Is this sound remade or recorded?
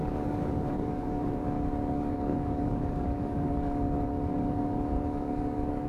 remade